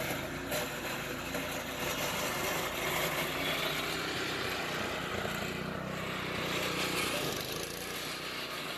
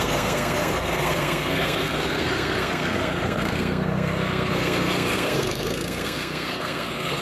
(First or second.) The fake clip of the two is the second